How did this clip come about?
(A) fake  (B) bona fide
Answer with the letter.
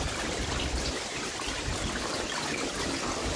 B